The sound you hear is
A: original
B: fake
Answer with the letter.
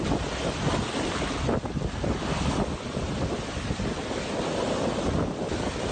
A